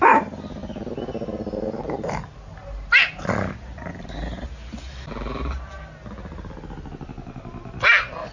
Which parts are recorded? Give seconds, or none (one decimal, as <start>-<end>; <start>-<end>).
0.0-8.3